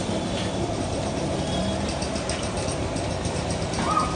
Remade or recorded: remade